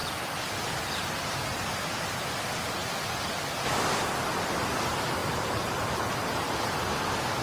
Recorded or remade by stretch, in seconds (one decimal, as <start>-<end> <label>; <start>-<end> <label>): 0.0-2.8 recorded; 2.8-3.3 remade; 3.3-5.2 recorded; 5.2-6.5 remade; 6.5-7.4 recorded